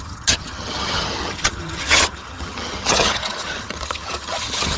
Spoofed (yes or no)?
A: yes